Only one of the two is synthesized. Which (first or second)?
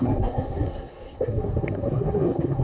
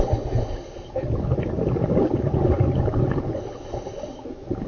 first